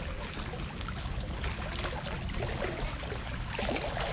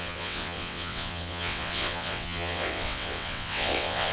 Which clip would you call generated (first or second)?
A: second